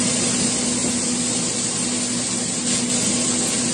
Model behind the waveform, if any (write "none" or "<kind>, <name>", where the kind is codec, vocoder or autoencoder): none